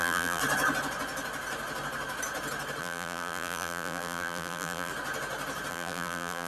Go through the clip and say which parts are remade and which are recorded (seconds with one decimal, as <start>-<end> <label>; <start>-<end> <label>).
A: 0.0-0.4 remade; 0.4-2.8 recorded; 2.8-4.9 remade; 4.9-5.7 recorded; 5.7-6.5 remade

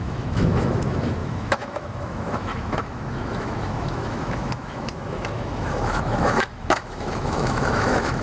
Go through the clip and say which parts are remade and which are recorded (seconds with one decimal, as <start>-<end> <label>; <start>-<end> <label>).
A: 0.0-8.2 remade